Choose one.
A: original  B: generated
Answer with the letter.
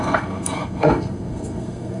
B